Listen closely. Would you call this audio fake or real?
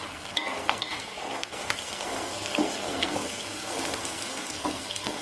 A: fake